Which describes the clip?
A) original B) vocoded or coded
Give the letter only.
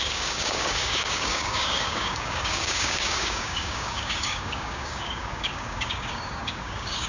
B